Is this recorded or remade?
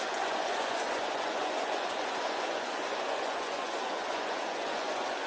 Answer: remade